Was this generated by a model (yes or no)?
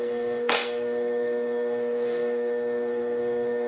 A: yes